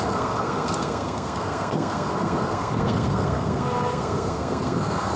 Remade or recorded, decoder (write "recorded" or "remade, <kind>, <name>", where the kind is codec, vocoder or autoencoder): remade, codec, SNAC